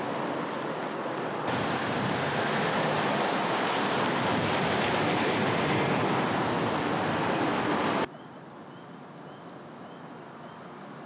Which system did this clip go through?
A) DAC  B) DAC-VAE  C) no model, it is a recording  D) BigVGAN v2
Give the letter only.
C